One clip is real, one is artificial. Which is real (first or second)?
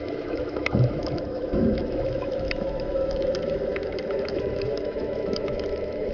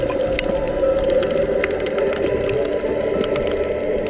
second